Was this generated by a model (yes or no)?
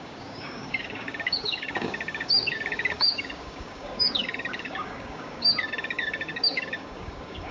yes